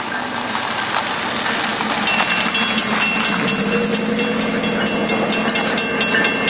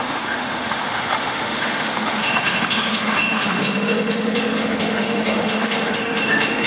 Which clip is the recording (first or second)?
first